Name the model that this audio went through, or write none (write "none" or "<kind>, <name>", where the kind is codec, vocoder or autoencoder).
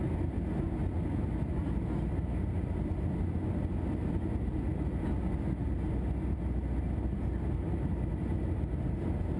none